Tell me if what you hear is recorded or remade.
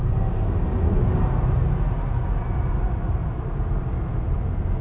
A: recorded